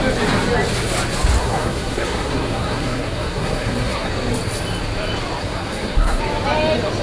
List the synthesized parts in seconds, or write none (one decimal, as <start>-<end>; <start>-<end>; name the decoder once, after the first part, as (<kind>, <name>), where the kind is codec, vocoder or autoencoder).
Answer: 1.4-4.1 (codec, SNAC); 5.4-6.2